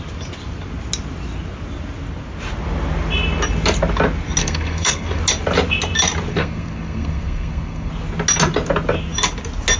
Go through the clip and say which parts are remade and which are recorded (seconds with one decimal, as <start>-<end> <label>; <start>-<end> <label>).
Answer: 0.0-4.4 recorded; 4.4-5.2 remade; 5.2-6.3 recorded; 6.3-7.9 remade; 7.9-9.8 recorded